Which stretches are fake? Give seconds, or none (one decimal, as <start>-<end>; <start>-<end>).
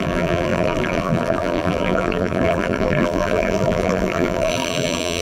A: 0.0-5.2